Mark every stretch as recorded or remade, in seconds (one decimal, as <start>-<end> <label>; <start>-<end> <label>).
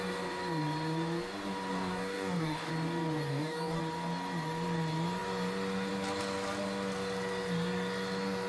0.0-1.7 recorded; 1.7-2.7 remade; 2.7-3.3 recorded; 3.3-3.8 remade; 3.8-8.5 recorded